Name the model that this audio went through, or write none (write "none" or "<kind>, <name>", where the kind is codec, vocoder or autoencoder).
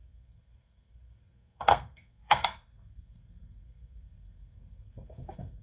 codec, SNAC